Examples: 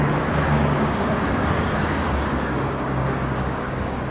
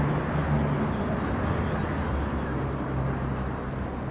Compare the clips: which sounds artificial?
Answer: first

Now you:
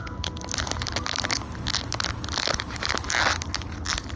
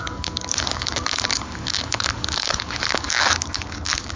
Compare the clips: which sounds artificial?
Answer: second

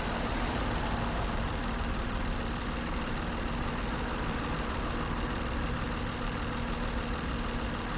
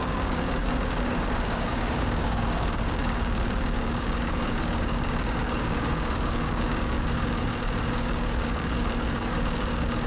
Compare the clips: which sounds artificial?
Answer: second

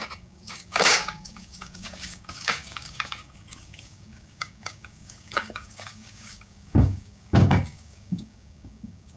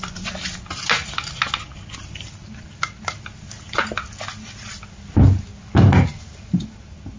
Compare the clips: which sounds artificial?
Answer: first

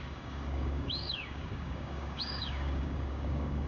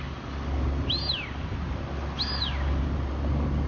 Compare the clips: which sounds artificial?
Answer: first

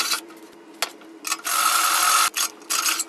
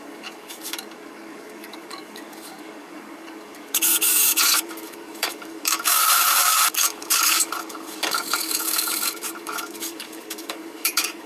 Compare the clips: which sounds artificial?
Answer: second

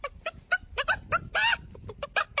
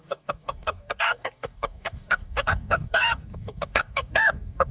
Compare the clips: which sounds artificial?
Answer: second